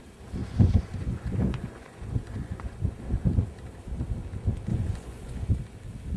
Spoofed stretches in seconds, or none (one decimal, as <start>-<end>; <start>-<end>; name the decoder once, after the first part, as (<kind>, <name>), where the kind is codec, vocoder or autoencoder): 0.4-2.9 (vocoder, Vocos); 4.7-5.5